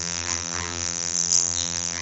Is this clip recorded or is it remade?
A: remade